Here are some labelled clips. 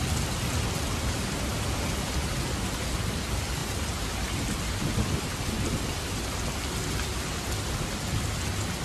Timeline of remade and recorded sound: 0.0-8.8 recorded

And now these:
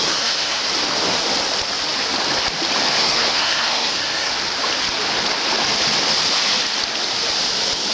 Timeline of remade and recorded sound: 0.0-0.6 remade; 0.6-3.0 recorded; 3.0-4.3 remade; 4.3-7.9 recorded

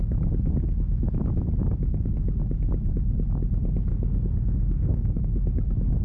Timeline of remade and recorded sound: 0.0-3.9 recorded; 3.9-5.2 remade; 5.2-6.0 recorded